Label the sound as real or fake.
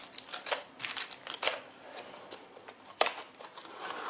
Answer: real